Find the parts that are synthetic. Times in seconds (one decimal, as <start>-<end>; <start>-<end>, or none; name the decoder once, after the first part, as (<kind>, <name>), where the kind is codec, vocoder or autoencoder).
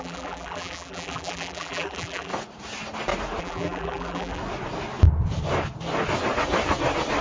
0.0-2.3 (vocoder, BigVGAN v2); 3.4-4.4